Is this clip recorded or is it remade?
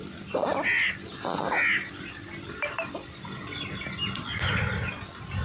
recorded